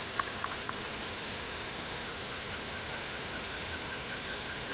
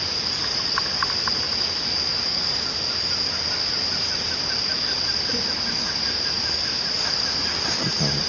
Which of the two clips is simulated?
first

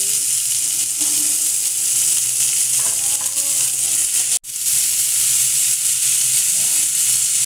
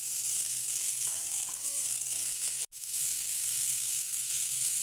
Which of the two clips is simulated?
second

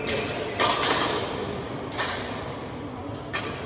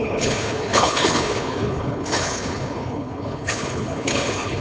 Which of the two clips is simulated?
second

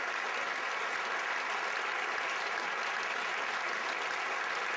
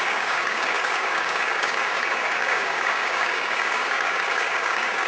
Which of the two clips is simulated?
second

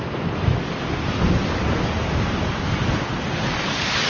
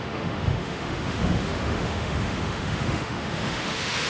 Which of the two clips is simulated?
second